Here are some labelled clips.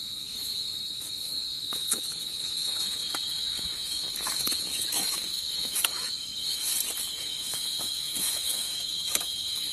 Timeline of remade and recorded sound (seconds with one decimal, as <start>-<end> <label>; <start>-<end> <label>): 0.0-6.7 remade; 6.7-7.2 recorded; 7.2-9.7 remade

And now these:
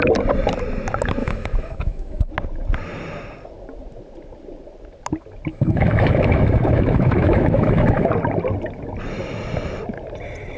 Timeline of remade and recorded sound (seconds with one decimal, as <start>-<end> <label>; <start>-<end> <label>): 0.0-1.2 recorded; 1.2-2.3 remade; 2.3-5.5 recorded; 5.5-8.1 remade; 8.1-10.6 recorded

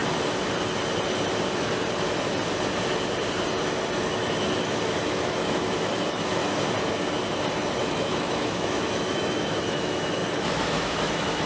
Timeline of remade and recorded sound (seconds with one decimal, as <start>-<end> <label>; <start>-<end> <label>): 0.0-4.1 recorded; 4.1-6.4 remade; 6.4-7.8 recorded; 7.8-11.5 remade

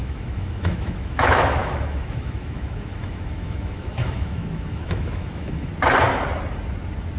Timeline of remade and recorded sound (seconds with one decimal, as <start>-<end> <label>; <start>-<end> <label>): 0.0-5.7 remade; 5.7-7.2 recorded

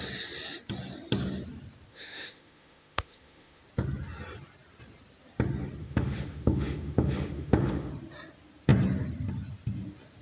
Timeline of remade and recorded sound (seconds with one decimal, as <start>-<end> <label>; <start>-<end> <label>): 0.0-1.9 recorded; 1.9-3.6 remade; 3.6-5.8 recorded; 5.8-7.9 remade; 7.9-10.2 recorded

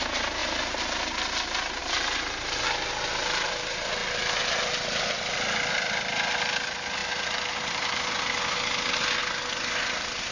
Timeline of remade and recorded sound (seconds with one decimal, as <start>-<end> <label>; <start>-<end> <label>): 0.0-10.3 recorded